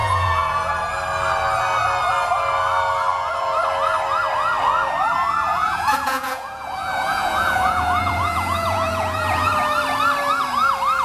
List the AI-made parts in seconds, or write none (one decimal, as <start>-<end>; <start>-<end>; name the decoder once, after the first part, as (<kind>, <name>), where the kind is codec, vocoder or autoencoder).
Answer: 0.0-0.7 (vocoder, Vocos); 5.5-9.5